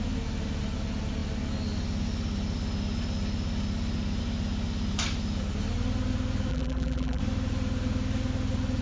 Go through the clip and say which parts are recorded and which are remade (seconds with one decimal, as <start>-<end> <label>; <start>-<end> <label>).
0.0-6.5 recorded; 6.5-7.2 remade; 7.2-8.8 recorded